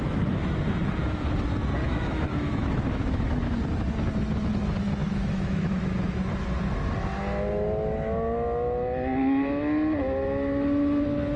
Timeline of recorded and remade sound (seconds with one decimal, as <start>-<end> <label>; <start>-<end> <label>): 0.0-1.8 recorded; 1.8-3.6 remade; 3.6-5.0 recorded; 5.0-6.2 remade; 6.2-11.4 recorded